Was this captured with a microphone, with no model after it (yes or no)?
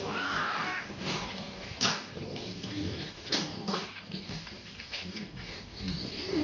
no